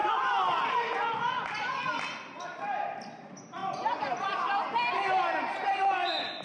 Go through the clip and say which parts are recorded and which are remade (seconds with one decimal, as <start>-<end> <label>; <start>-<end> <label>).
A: 0.0-6.4 recorded